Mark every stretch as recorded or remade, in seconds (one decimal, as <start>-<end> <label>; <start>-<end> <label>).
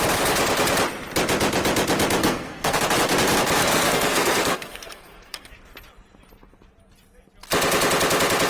0.0-2.2 recorded; 2.2-2.8 remade; 2.8-3.6 recorded; 3.6-5.5 remade; 5.5-8.5 recorded